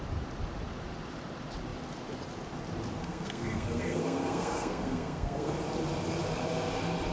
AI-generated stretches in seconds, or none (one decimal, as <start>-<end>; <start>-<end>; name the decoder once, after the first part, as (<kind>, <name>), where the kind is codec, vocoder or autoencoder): 3.0-5.5 (codec, SNAC)